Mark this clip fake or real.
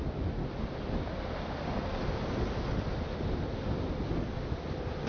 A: real